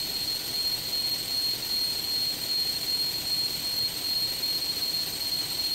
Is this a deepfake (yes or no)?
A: no